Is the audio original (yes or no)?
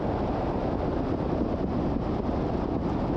yes